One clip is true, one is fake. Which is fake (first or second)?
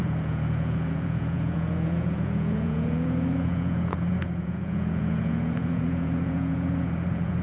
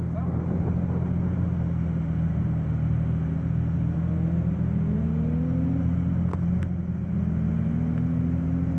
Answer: first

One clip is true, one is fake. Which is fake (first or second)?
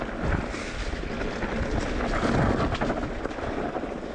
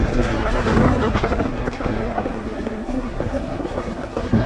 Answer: second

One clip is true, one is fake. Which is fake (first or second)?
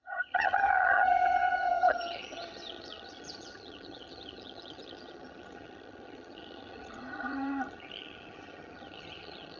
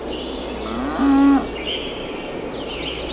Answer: first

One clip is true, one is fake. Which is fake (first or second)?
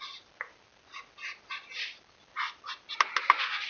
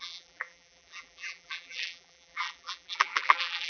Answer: second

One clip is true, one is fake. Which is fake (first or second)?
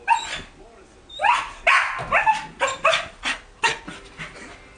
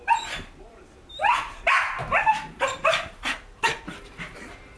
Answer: second